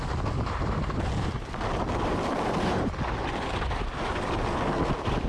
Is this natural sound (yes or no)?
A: yes